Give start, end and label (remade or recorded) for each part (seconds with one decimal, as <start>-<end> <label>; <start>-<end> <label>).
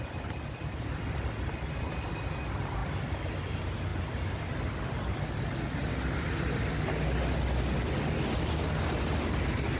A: 0.0-9.8 recorded